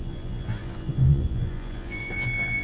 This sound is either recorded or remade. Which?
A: remade